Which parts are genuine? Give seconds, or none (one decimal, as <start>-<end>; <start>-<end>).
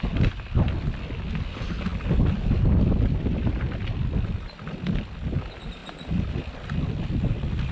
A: 0.0-7.7